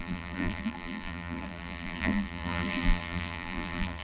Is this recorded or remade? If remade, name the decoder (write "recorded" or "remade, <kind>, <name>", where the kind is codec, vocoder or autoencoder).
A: remade, vocoder, BigVGAN v2